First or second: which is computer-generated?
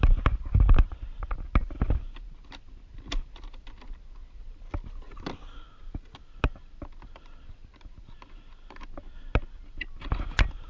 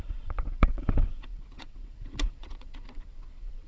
second